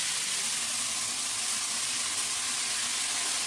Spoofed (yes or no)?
no